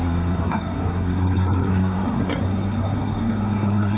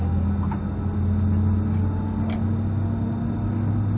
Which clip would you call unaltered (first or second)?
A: second